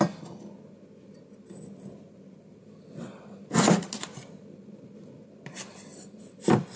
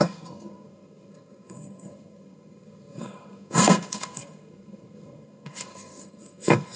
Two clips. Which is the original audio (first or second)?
first